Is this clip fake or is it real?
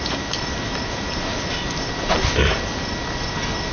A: real